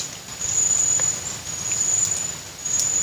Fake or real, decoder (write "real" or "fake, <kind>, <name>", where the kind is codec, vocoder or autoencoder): real